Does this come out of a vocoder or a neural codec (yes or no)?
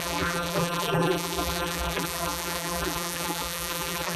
yes